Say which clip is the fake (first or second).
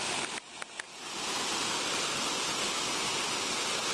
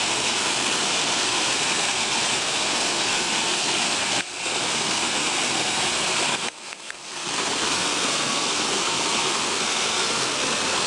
second